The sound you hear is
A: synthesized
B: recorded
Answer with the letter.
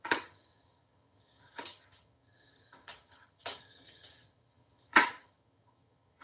A